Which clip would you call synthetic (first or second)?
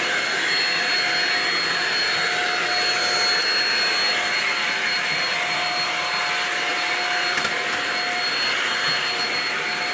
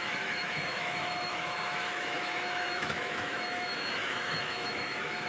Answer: second